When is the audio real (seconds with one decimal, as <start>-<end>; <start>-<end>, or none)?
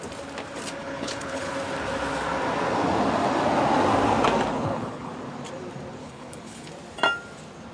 0.0-0.8; 1.5-4.5; 5.1-6.0; 6.7-7.7